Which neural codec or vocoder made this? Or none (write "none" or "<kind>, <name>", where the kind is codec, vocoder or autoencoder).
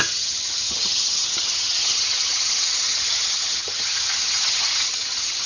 vocoder, HiFi-GAN